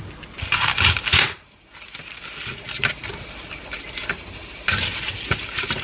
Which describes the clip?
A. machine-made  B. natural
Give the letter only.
B